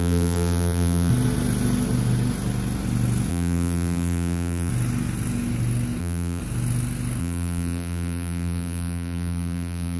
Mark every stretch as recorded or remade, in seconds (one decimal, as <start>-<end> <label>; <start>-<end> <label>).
0.0-1.1 remade; 1.1-3.3 recorded; 3.3-4.7 remade; 4.7-6.0 recorded; 6.0-6.4 remade; 6.4-7.2 recorded; 7.2-10.0 remade